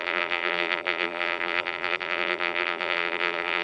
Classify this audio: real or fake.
fake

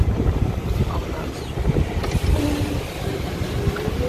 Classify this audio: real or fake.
real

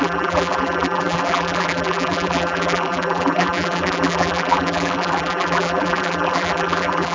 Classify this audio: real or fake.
fake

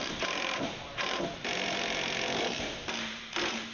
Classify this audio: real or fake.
fake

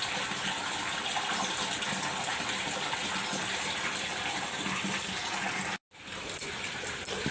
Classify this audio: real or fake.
real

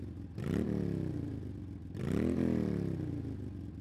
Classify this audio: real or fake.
fake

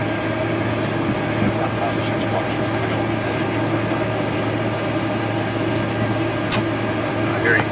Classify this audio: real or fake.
real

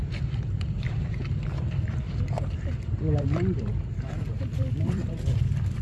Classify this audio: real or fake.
fake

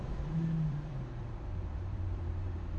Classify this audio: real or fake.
fake